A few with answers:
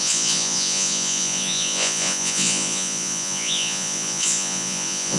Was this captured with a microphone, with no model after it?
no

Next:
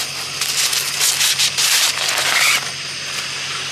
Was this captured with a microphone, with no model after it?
yes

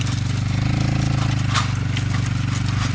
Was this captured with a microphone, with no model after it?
yes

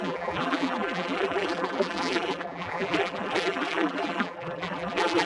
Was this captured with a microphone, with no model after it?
no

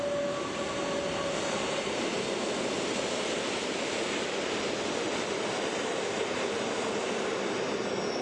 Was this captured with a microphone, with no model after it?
yes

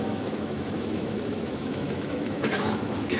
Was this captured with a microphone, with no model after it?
no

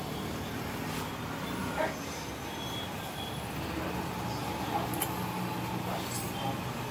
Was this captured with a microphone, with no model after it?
yes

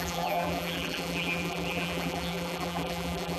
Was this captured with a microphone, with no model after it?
no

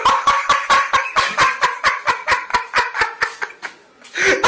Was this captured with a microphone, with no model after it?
yes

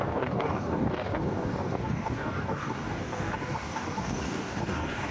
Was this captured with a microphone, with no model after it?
no